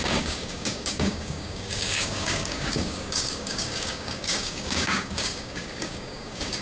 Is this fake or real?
fake